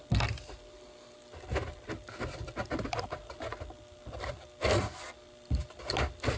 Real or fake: real